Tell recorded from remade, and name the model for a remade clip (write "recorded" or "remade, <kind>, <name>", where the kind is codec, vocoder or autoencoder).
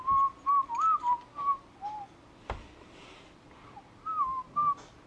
recorded